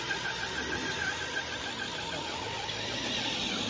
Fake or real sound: real